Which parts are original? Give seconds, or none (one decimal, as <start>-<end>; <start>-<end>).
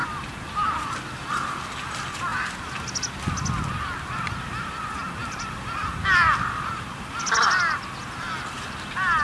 0.0-5.2; 6.9-9.2